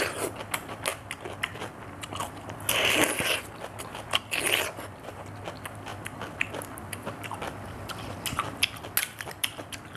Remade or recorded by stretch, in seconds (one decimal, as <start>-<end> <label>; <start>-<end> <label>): 0.0-10.0 recorded